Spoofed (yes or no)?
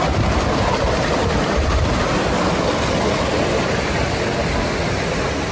no